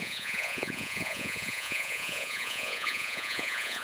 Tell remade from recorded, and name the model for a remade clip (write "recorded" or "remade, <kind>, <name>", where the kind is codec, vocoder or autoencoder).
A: remade, vocoder, Vocos